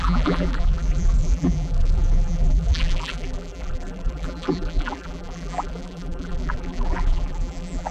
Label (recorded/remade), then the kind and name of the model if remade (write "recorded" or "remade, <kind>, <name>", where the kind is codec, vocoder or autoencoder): remade, vocoder, BigVGAN v2